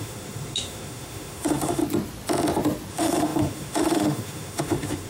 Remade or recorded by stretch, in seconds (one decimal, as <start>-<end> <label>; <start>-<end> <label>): 0.0-1.8 remade; 1.8-2.9 recorded; 2.9-5.1 remade